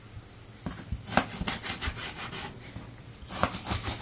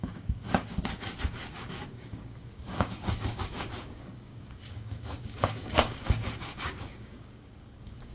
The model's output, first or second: second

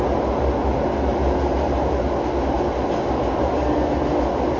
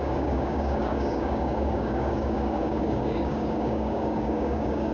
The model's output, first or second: second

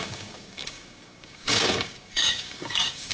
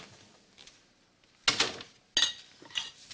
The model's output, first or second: first